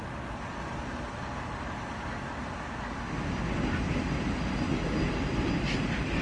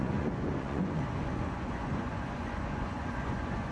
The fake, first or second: second